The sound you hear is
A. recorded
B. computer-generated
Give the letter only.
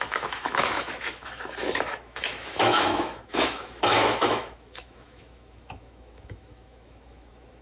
B